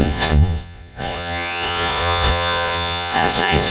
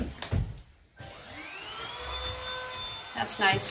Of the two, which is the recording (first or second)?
second